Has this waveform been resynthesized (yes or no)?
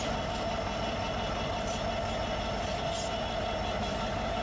no